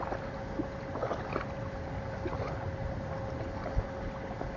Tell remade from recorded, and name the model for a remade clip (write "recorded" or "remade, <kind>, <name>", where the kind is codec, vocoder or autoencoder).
recorded